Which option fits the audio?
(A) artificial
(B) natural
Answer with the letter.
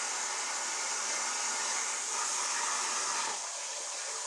B